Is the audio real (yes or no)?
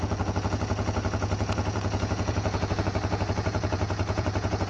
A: no